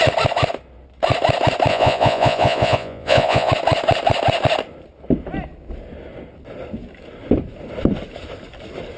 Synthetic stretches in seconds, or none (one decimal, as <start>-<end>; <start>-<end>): 1.7-3.5